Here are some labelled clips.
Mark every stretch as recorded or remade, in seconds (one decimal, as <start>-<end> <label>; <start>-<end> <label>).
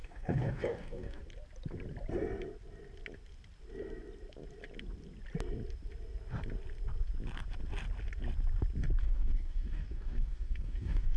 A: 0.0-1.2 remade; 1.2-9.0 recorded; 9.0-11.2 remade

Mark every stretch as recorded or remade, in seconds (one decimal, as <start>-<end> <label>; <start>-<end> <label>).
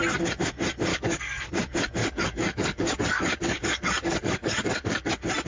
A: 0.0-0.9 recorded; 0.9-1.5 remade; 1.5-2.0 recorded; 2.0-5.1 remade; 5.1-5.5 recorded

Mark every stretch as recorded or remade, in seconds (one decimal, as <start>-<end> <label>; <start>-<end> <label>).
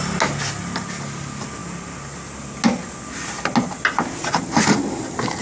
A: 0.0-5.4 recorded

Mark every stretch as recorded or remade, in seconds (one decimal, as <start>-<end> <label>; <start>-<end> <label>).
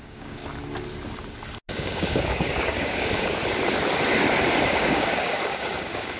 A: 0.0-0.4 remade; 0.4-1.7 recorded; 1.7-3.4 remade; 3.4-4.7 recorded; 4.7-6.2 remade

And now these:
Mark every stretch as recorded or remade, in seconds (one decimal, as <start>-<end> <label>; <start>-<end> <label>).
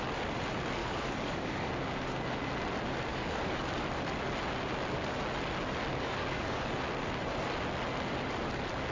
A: 0.0-0.8 recorded; 0.8-1.7 remade; 1.7-3.1 recorded; 3.1-3.7 remade; 3.7-5.9 recorded; 5.9-6.7 remade; 6.7-8.9 recorded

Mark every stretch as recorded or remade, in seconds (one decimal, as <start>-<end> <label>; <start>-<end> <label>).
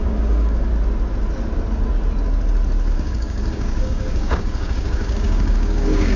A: 0.0-0.7 remade; 0.7-2.9 recorded; 2.9-6.2 remade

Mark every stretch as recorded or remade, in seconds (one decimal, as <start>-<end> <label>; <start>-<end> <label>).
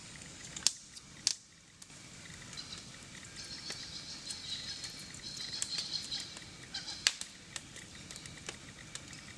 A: 0.0-0.6 remade; 0.6-9.4 recorded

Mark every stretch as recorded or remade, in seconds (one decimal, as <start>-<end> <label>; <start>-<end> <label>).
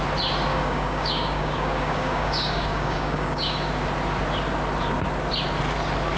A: 0.0-0.5 recorded; 0.5-3.7 remade; 3.7-6.2 recorded